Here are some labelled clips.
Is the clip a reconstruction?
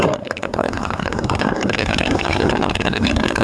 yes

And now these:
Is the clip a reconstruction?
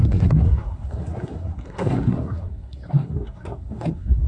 yes